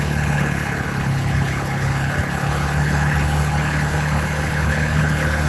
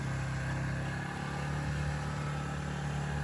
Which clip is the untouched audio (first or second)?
second